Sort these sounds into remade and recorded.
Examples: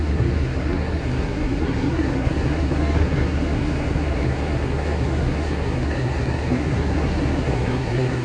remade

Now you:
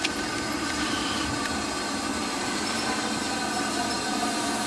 recorded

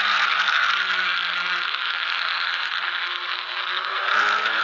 remade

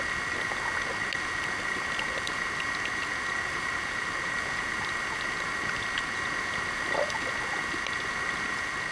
recorded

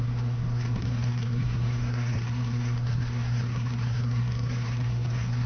remade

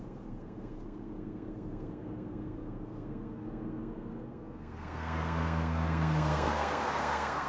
remade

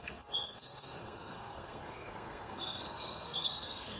remade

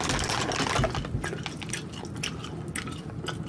recorded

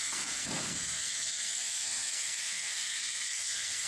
remade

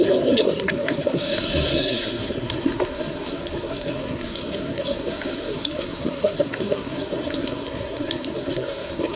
remade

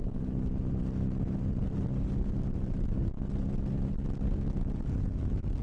recorded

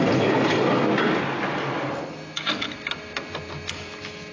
recorded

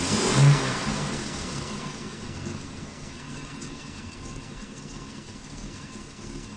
remade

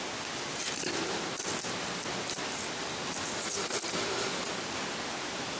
recorded